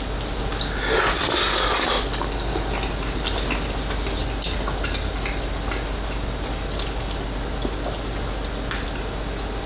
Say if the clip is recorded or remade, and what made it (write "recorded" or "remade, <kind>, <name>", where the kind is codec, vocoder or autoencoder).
recorded